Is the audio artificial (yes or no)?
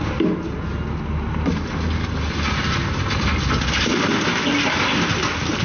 no